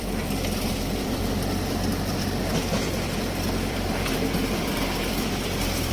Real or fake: fake